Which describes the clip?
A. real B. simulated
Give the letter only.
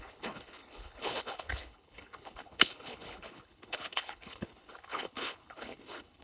B